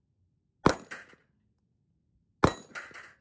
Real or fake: real